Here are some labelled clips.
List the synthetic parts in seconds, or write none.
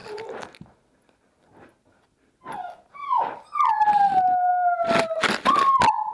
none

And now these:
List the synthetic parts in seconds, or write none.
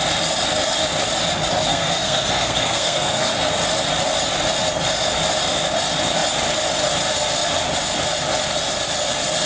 1.7-3.3 (codec, SNAC)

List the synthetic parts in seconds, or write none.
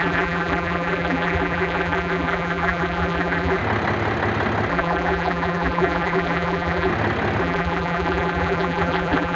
0.0-3.6 (vocoder, BigVGAN v2); 4.7-6.9; 7.4-9.3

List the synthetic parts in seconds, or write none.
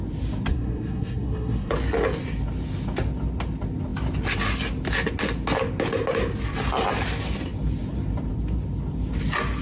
0.5-1.7 (codec, SNAC)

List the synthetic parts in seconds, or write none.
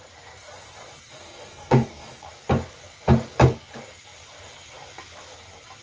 1.1-2.3 (codec, DAC)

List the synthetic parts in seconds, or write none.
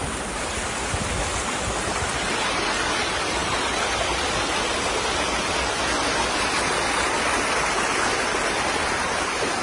3.4-4.3 (vocoder, BigVGAN v2); 8.8-9.6